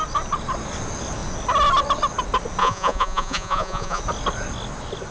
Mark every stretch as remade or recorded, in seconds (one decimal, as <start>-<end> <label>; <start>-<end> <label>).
0.0-2.6 recorded; 2.6-4.0 remade; 4.0-5.1 recorded